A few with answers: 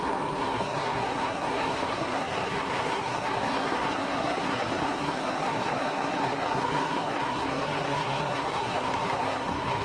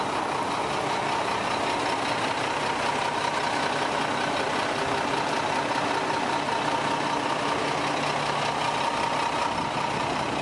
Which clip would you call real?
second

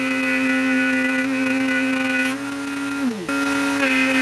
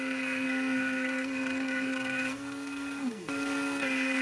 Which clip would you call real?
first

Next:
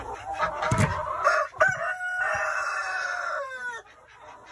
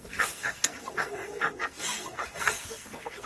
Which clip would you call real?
first